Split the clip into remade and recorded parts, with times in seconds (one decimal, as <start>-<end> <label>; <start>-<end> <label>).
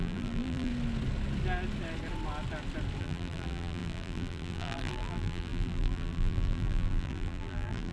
0.0-0.7 remade; 0.7-3.0 recorded; 3.0-7.9 remade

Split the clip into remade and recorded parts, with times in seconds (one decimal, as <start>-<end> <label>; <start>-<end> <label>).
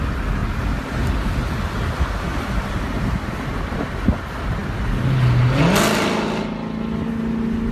0.0-2.3 recorded; 2.3-3.7 remade; 3.7-7.7 recorded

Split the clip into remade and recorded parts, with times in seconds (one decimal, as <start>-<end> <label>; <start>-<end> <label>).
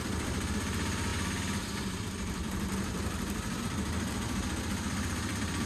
0.0-5.7 remade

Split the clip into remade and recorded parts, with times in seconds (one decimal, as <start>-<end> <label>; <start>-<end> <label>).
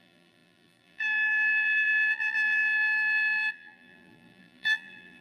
0.0-5.2 remade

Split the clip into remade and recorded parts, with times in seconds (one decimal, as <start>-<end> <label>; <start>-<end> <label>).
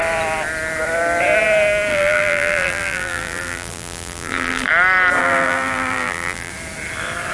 0.0-1.9 recorded; 1.9-4.7 remade; 4.7-5.2 recorded; 5.2-6.5 remade; 6.5-7.3 recorded